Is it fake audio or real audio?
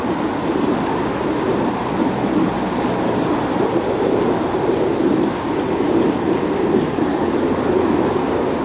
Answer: real